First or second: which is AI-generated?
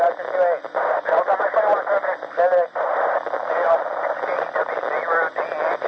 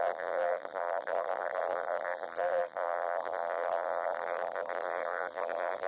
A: second